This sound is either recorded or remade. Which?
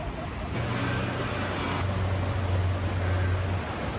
recorded